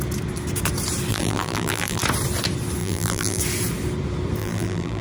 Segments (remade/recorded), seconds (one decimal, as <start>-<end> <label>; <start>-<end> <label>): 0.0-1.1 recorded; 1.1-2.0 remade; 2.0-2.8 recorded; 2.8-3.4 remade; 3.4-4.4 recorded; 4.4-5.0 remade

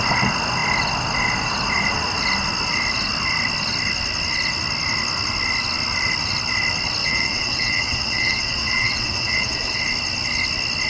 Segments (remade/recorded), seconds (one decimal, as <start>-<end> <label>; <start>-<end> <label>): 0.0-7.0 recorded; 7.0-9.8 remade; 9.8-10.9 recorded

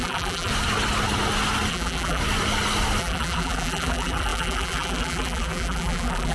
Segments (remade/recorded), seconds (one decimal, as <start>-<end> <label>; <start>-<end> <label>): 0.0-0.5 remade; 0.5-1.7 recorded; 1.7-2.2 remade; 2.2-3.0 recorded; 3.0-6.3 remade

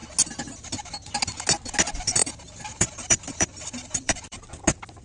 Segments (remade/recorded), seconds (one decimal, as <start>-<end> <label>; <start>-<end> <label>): 0.0-2.2 recorded; 2.2-4.6 remade; 4.6-5.0 recorded

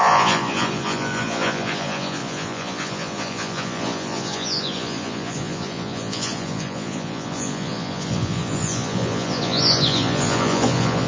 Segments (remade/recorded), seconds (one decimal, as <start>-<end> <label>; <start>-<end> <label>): 0.0-11.1 remade

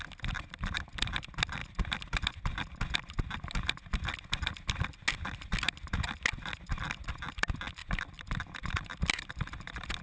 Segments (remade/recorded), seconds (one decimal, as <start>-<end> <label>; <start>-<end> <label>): 0.0-1.6 recorded; 1.6-2.3 remade; 2.3-7.8 recorded; 7.8-10.0 remade

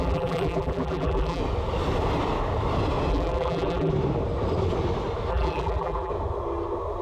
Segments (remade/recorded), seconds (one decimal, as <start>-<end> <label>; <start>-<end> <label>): 0.0-1.4 remade; 1.4-3.1 recorded; 3.1-3.9 remade; 3.9-5.3 recorded; 5.3-6.1 remade; 6.1-7.0 recorded